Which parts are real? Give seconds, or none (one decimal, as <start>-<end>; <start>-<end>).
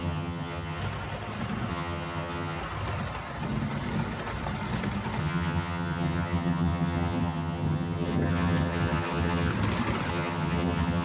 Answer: 0.8-1.7; 2.6-5.2; 9.5-10.1